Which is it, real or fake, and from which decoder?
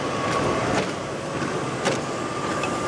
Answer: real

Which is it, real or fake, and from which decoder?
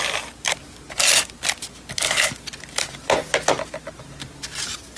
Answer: real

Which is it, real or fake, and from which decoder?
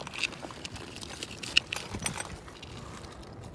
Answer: real